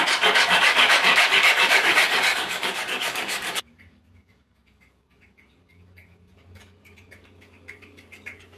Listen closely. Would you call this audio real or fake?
fake